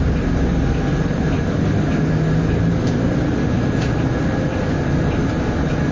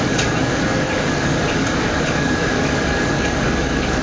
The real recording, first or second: first